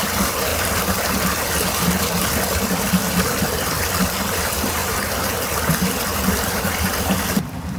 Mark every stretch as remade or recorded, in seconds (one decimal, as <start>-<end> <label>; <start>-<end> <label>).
0.0-7.8 recorded